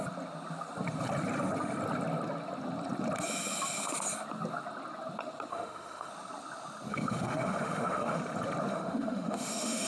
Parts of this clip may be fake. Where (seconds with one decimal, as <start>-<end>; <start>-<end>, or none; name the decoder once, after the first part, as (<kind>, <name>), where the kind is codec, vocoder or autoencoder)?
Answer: 5.5-6.1 (autoencoder, DAC-VAE); 6.9-8.2; 8.7-9.9